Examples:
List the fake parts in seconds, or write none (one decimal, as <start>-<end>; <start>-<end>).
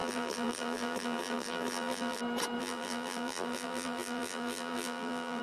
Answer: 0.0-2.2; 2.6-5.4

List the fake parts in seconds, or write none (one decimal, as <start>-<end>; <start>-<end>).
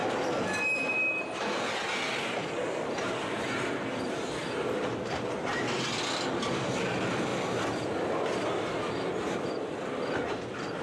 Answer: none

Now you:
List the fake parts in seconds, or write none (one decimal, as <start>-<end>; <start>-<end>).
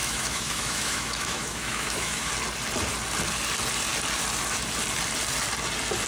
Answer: 0.0-2.3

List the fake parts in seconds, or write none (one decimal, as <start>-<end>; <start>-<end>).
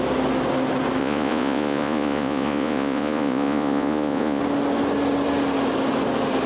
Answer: 1.0-4.4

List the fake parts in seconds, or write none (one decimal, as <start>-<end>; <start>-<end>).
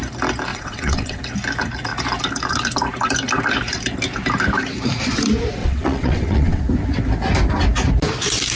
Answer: 0.5-1.2; 5.6-6.6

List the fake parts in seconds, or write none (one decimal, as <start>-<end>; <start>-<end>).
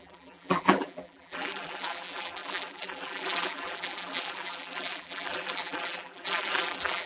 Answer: 0.0-7.1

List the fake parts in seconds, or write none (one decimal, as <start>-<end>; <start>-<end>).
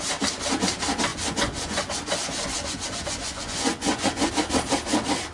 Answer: 1.1-4.3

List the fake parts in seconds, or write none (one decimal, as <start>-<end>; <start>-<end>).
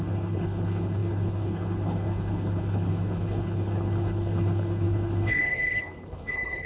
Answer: 0.0-6.7